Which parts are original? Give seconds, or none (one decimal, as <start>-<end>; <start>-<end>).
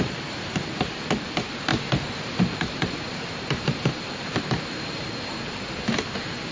none